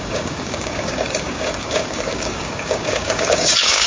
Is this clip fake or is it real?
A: fake